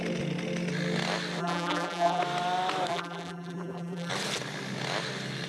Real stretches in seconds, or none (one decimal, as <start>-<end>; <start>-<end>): 0.0-1.4; 2.2-2.9; 4.1-5.5